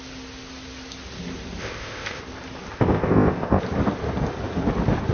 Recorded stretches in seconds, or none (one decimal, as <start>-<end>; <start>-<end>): 0.0-1.6; 2.2-2.7; 3.6-5.1

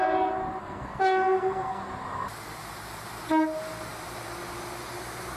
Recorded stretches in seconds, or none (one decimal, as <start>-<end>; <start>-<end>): 0.0-0.6; 1.8-5.4

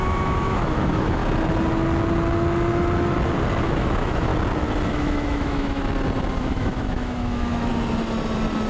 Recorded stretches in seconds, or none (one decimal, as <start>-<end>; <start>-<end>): 1.2-3.6; 4.3-4.9; 5.8-6.4; 7.7-8.7

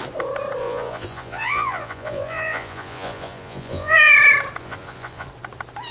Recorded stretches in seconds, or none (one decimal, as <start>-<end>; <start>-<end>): 0.0-0.6; 4.1-4.6; 5.3-5.9

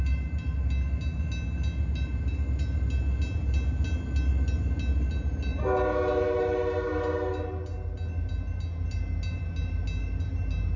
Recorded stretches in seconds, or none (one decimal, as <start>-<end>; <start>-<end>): 0.0-10.8

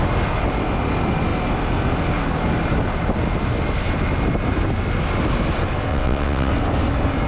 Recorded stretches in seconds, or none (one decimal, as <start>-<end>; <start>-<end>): 0.0-5.9; 6.5-7.3

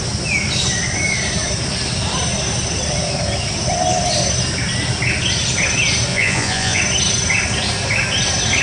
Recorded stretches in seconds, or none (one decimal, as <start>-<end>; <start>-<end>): 0.0-6.1; 6.8-8.6

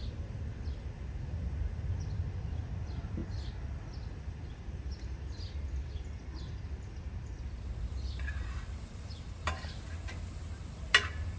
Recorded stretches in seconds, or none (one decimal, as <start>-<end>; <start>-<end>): 0.0-11.4